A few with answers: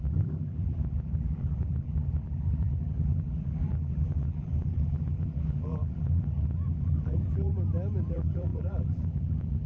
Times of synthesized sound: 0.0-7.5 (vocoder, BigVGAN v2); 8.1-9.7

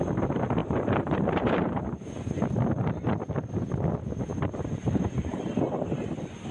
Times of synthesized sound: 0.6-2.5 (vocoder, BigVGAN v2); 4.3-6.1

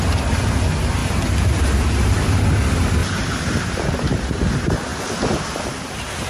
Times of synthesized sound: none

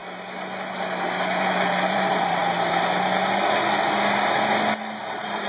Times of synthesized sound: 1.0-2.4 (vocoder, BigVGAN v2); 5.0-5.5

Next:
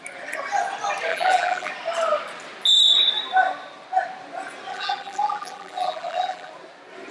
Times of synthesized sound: 1.1-1.7 (vocoder, BigVGAN v2); 4.7-6.5